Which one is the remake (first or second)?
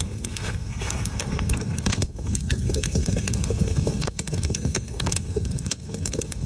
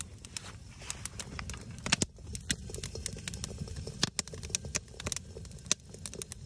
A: first